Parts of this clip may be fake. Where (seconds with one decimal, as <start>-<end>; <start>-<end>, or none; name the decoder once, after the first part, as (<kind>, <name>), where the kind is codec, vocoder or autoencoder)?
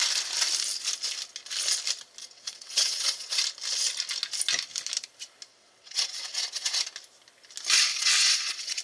2.2-3.4 (vocoder, WaveNeXt); 5.5-6.8; 7.9-8.8